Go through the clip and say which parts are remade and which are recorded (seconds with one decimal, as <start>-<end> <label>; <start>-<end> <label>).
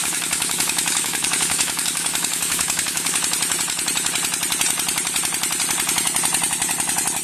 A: 0.0-3.2 remade; 3.2-7.2 recorded